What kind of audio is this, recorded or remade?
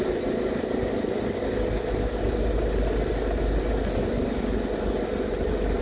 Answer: recorded